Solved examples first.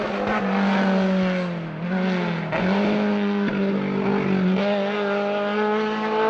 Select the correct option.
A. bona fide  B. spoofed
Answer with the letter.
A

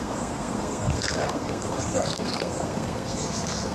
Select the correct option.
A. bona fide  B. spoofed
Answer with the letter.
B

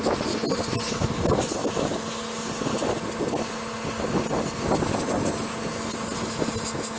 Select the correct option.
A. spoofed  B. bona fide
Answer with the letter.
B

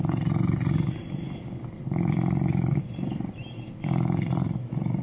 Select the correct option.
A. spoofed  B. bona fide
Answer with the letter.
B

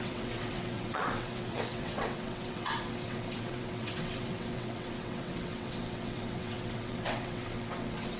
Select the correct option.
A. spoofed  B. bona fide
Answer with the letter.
A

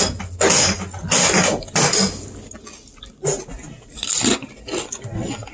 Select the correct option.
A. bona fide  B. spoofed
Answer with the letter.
A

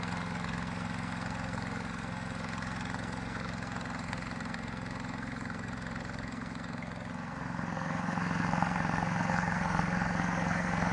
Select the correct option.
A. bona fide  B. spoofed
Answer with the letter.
B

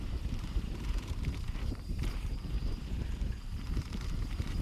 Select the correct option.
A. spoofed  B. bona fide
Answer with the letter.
A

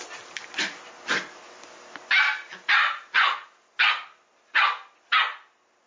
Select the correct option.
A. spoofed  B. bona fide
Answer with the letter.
B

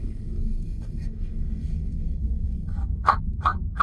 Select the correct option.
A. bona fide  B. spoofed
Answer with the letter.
B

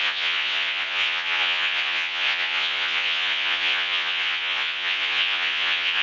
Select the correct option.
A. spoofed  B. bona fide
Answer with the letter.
A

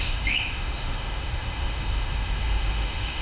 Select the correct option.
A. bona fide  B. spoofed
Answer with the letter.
B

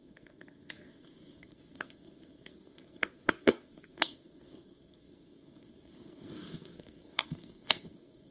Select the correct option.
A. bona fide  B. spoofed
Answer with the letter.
B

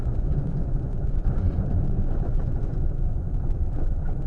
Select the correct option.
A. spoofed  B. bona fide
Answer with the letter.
A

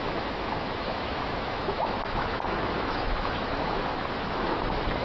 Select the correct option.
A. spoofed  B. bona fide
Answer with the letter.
A